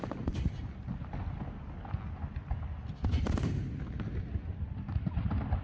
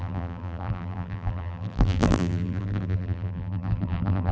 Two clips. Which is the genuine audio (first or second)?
first